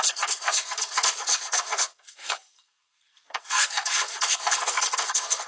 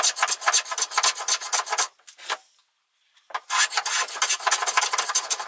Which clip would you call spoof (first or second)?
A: first